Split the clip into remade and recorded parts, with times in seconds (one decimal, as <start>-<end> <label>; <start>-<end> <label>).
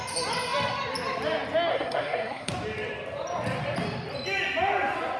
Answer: 0.0-1.7 recorded; 1.7-2.5 remade; 2.5-5.2 recorded